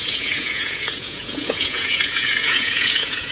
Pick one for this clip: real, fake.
fake